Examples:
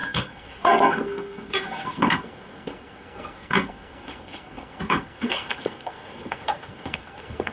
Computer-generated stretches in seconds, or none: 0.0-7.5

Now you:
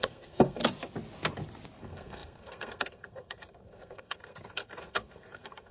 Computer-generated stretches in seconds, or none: 0.0-0.6; 1.8-5.7

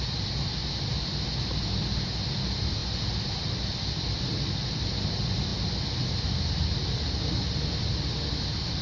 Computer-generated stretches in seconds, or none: none

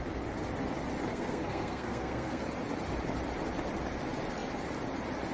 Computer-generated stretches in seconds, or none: 1.1-2.4